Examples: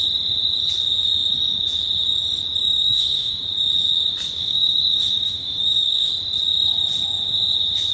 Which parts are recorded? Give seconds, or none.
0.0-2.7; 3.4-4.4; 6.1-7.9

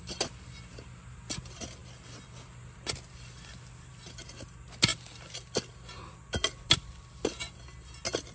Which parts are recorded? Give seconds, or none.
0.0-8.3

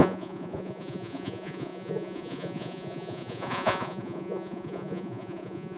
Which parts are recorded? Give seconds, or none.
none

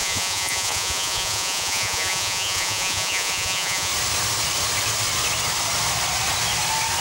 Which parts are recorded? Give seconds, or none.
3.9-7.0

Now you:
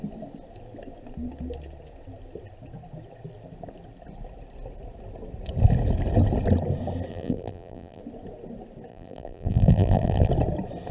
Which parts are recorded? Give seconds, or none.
0.0-7.1; 8.0-8.9; 10.3-10.9